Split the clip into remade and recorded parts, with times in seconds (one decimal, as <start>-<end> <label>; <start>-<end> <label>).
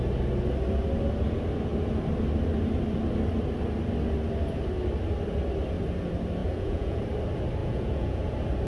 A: 0.0-6.4 recorded; 6.4-7.0 remade; 7.0-7.6 recorded; 7.6-8.2 remade; 8.2-8.7 recorded